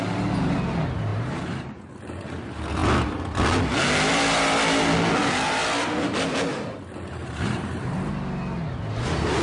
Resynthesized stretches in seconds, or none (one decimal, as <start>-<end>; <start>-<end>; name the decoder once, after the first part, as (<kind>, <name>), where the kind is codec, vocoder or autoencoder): 1.1-1.8 (vocoder, BigVGAN v2); 7.2-8.1